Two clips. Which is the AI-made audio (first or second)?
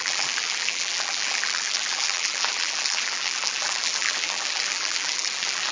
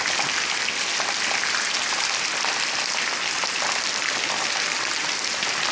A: first